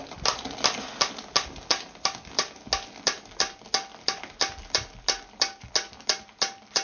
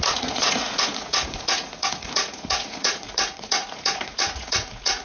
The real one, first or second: first